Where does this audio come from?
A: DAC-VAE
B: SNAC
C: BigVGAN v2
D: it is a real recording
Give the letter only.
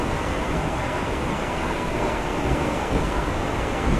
B